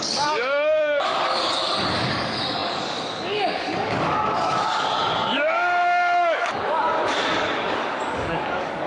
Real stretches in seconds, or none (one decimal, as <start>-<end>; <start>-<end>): none